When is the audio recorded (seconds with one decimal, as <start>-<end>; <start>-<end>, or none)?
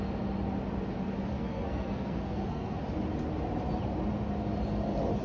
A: 0.0-1.3; 2.8-5.2